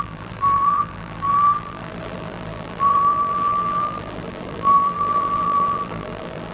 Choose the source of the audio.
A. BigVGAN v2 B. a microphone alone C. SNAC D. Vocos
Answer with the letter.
A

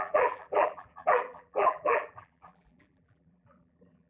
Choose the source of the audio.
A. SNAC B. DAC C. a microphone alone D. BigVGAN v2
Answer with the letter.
D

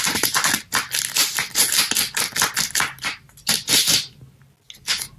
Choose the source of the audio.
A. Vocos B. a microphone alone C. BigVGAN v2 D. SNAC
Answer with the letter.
B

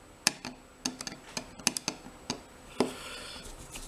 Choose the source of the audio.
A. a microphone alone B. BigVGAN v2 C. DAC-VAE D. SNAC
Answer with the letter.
A